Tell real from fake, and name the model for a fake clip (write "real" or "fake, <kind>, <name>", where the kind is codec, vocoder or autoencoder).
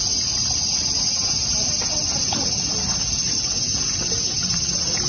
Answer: real